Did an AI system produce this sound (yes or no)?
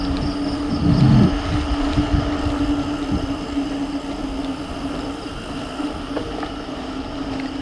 no